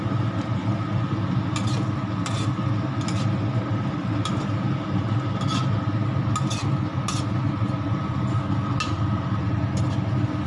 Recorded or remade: recorded